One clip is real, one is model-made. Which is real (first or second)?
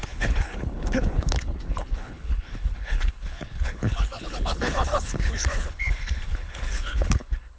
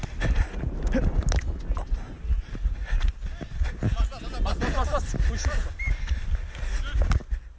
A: second